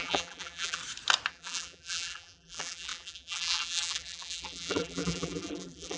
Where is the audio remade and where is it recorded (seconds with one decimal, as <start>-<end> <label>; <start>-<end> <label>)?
0.0-0.8 remade; 0.8-1.3 recorded; 1.3-6.0 remade